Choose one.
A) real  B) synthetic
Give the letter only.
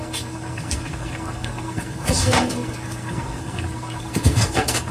B